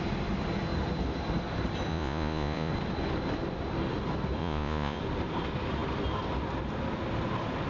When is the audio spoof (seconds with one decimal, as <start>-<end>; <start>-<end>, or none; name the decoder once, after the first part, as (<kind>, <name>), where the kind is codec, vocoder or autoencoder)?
1.9-2.7 (vocoder, Vocos); 4.4-5.0